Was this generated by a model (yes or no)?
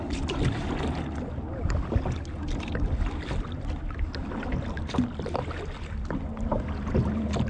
no